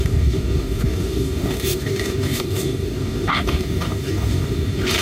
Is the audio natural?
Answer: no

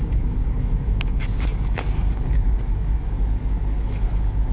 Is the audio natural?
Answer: no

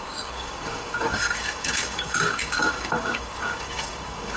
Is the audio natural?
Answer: no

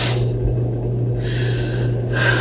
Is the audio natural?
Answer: yes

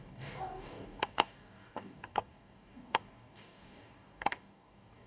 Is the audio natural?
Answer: no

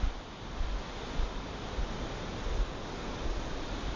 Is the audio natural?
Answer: yes